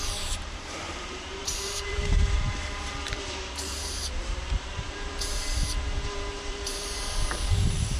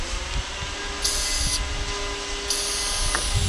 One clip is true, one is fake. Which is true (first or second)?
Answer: second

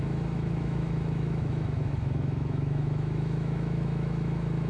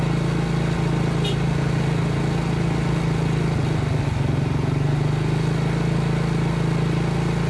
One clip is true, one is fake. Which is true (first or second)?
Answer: second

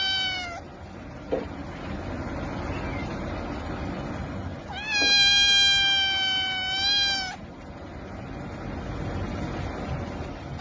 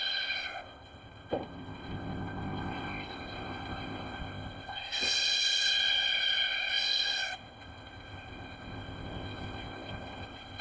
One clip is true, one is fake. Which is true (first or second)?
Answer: first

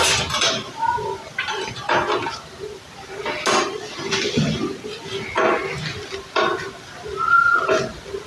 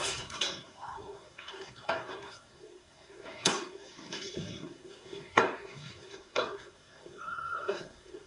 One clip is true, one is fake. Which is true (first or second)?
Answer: first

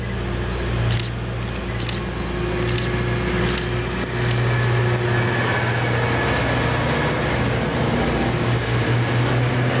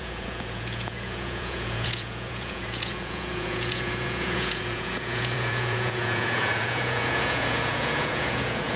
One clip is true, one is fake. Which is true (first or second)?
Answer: first